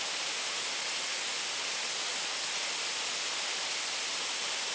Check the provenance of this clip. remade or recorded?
recorded